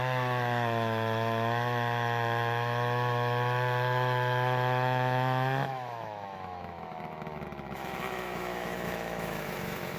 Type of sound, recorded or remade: remade